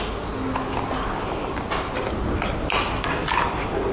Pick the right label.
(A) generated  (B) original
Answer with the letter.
B